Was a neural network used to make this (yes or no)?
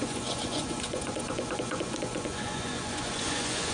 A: yes